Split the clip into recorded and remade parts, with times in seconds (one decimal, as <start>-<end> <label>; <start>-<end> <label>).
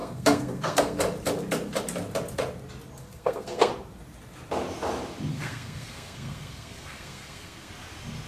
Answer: 0.0-1.0 remade; 1.0-3.0 recorded; 3.0-3.7 remade; 3.7-5.3 recorded; 5.3-7.7 remade; 7.7-8.3 recorded